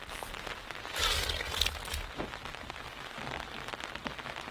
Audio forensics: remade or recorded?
recorded